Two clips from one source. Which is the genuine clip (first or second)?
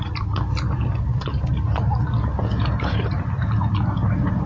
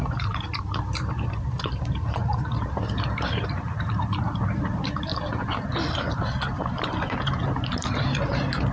first